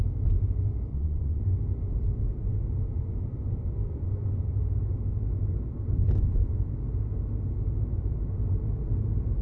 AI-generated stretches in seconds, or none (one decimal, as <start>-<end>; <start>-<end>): 0.9-1.4